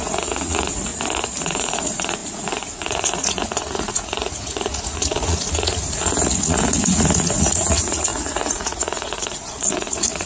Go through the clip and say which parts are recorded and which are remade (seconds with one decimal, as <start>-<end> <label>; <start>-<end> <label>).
0.0-0.9 remade; 0.9-1.4 recorded; 1.4-10.3 remade